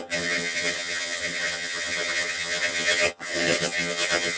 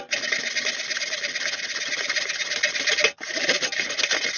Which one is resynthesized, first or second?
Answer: first